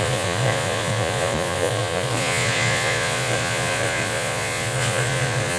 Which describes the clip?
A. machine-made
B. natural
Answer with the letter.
A